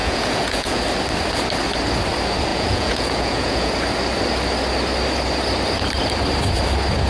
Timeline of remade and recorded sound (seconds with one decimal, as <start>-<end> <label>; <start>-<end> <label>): 0.0-0.8 remade; 0.8-2.5 recorded; 2.5-3.7 remade; 3.7-7.1 recorded